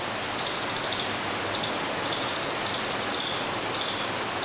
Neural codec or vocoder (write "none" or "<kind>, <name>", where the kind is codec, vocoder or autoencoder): none